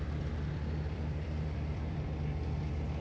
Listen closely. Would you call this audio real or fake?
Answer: fake